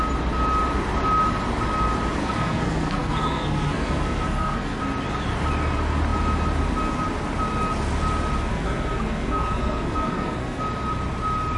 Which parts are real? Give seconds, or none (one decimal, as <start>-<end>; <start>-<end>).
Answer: 0.0-2.2; 4.8-8.5; 10.6-11.6